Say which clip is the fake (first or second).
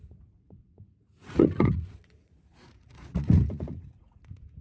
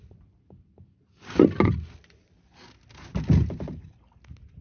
first